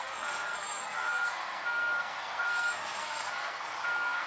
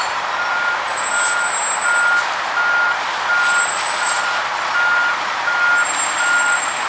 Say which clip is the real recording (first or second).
second